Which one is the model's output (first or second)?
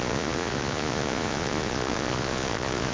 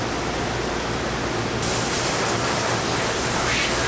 first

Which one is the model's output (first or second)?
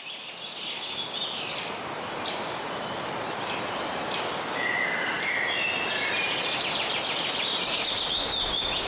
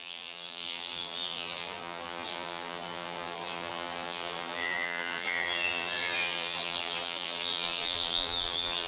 second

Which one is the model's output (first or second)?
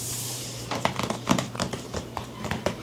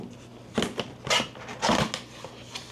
first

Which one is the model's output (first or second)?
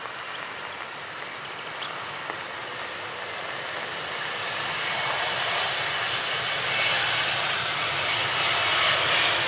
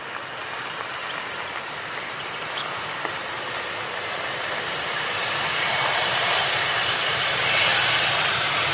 second